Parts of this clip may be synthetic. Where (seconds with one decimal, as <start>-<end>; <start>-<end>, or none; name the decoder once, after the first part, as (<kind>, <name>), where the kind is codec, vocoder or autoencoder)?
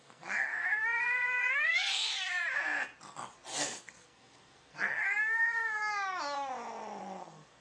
0.0-2.1 (codec, SNAC); 3.6-5.8; 7.0-7.6